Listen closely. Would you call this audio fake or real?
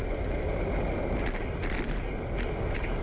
real